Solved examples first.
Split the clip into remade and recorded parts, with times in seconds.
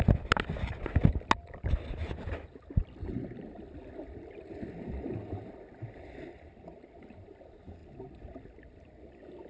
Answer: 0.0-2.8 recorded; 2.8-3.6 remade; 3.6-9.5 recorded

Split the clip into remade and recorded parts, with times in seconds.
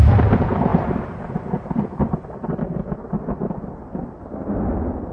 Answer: 0.0-5.1 recorded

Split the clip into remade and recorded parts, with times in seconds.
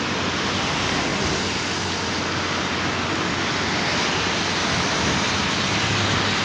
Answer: 0.0-6.4 recorded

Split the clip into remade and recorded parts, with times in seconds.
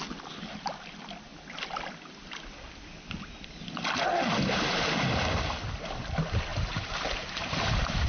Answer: 0.0-6.5 recorded; 6.5-8.1 remade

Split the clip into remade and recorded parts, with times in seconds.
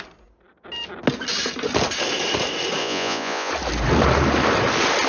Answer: 0.0-2.8 recorded; 2.8-3.5 remade; 3.5-5.1 recorded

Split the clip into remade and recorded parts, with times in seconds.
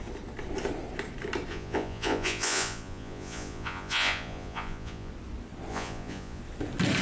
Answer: 0.0-1.5 recorded; 1.5-5.1 remade; 5.1-5.7 recorded; 5.7-6.4 remade; 6.4-7.0 recorded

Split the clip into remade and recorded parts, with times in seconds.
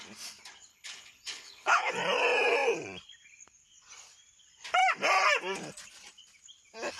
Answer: 0.0-0.7 recorded; 0.7-1.9 remade; 1.9-7.0 recorded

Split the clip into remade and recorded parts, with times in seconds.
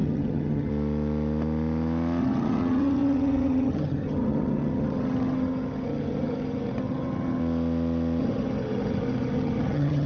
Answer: 0.0-0.7 remade; 0.7-2.2 recorded; 2.2-7.4 remade; 7.4-8.2 recorded; 8.2-10.1 remade